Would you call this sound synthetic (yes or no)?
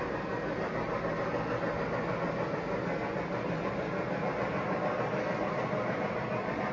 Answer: no